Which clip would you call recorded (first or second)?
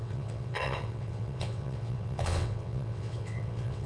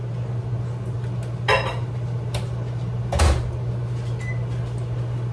second